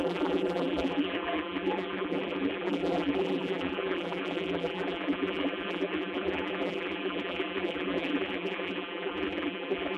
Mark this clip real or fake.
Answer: fake